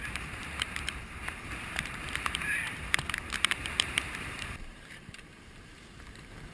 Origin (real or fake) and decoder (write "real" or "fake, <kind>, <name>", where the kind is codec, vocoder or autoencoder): fake, vocoder, BigVGAN v2